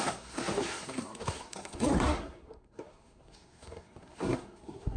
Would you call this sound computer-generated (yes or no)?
yes